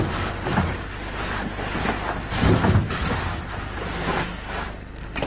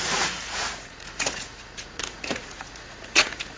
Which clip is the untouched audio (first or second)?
first